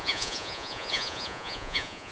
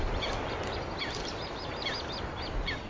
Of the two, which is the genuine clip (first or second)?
second